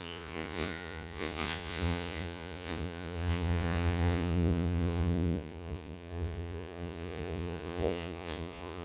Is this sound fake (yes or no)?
yes